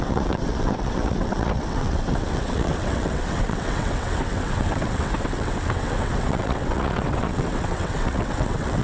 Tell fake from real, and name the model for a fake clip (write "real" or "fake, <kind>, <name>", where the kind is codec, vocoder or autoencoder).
fake, vocoder, WaveNeXt